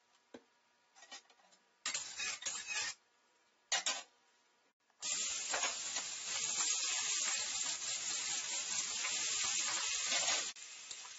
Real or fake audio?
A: real